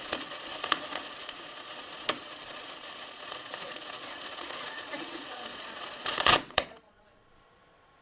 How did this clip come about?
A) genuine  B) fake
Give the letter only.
B